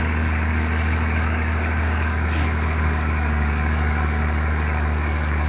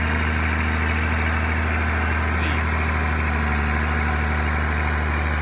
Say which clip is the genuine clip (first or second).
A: second